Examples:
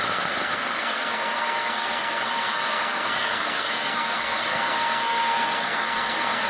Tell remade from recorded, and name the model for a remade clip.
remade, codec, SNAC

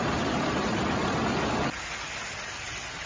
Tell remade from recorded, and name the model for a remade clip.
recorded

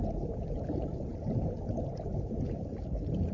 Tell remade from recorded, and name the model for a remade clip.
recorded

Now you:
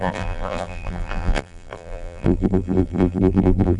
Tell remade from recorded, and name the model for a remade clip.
remade, vocoder, BigVGAN v2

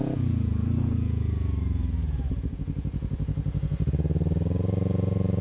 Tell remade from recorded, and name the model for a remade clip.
remade, vocoder, Vocos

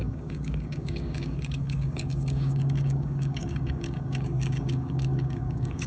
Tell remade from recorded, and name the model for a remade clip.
remade, codec, DAC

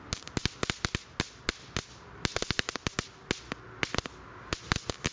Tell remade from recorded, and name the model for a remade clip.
recorded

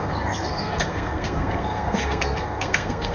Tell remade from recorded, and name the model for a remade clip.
remade, codec, SNAC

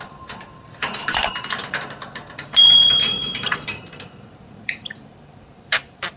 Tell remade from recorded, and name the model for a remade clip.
remade, vocoder, BigVGAN v2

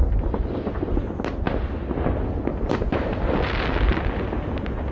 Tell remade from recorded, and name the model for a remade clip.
recorded